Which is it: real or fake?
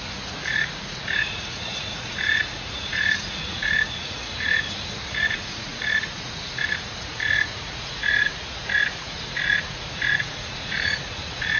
fake